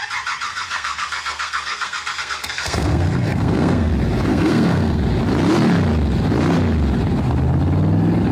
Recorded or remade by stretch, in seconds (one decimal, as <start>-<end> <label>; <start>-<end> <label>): 0.0-0.5 recorded; 0.5-3.9 remade; 3.9-4.3 recorded; 4.3-5.0 remade; 5.0-8.3 recorded